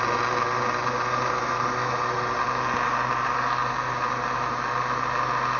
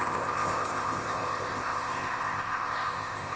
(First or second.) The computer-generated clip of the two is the second